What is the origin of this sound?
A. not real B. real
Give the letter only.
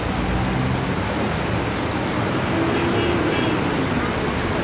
B